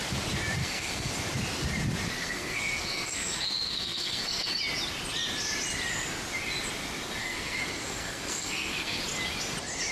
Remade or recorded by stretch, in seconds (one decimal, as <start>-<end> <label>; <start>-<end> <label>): 0.0-0.6 recorded; 0.6-1.1 remade; 1.1-2.2 recorded; 2.2-4.5 remade; 4.5-7.2 recorded; 7.2-9.0 remade; 9.0-9.9 recorded